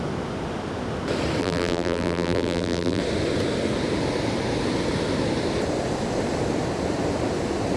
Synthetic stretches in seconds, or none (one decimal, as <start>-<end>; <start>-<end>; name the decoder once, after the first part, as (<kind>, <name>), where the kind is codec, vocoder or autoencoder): 1.4-3.0 (vocoder, BigVGAN v2)